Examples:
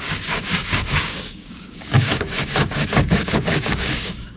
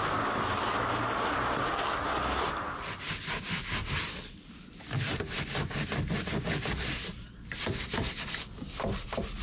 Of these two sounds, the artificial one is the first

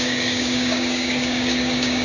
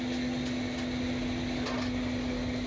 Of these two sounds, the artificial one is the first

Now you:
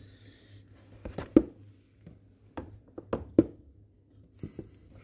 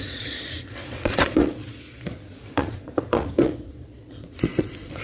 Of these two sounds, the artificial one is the second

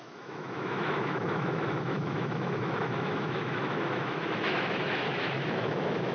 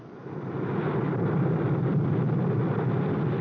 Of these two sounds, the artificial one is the first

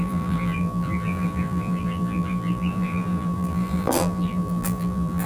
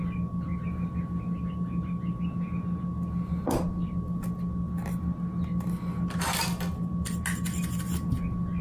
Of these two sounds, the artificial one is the first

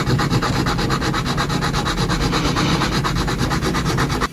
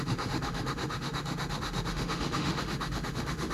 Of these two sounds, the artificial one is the second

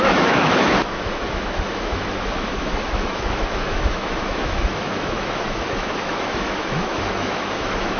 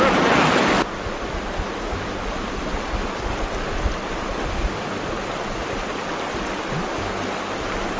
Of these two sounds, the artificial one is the first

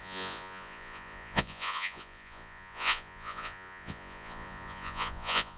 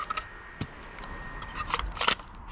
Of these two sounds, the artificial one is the first